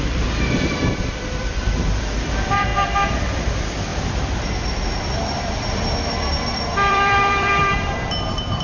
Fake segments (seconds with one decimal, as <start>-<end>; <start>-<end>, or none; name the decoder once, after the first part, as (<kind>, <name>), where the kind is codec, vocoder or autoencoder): 0.0-3.9 (vocoder, BigVGAN v2); 4.4-8.6